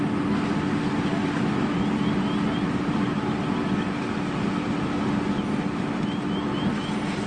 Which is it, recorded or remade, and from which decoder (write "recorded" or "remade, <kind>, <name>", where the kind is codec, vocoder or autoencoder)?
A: recorded